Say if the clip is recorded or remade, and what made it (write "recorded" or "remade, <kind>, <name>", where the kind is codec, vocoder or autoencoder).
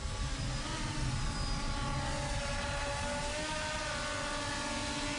recorded